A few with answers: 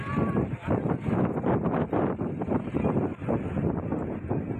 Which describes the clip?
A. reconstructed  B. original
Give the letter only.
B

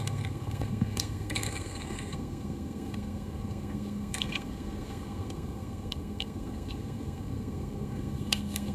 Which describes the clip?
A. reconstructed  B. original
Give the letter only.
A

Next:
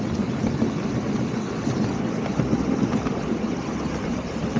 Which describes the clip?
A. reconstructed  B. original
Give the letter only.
B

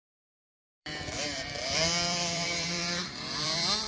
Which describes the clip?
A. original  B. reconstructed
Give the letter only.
B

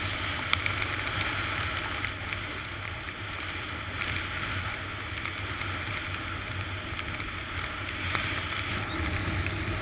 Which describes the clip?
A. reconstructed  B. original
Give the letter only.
B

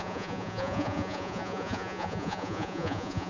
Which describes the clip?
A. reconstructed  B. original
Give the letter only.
A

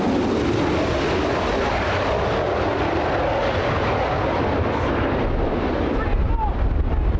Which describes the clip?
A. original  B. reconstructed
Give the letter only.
A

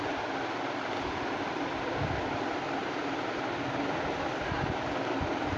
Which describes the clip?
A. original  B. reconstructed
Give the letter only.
A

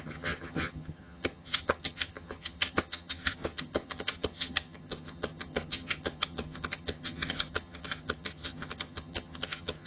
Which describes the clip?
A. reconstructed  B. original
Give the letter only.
A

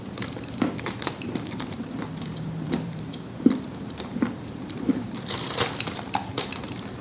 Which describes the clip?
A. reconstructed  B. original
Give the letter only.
A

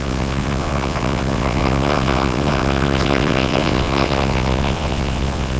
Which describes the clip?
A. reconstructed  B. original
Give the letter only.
A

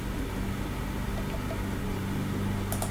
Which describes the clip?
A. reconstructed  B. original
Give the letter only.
B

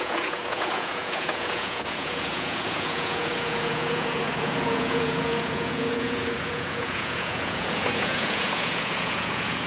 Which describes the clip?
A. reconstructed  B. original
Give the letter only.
A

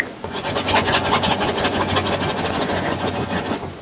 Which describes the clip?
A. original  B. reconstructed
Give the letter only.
B